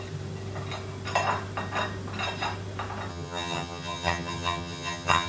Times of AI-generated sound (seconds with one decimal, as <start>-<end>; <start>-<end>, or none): 3.1-5.3